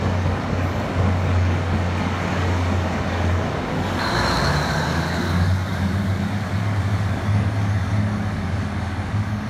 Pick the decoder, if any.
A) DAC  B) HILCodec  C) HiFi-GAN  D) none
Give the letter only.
A